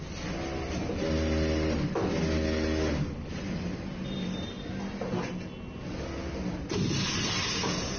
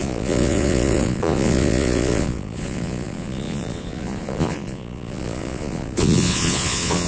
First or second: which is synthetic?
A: second